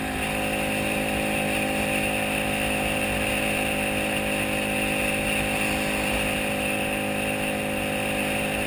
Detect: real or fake real